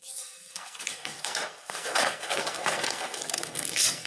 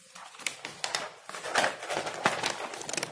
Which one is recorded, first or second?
second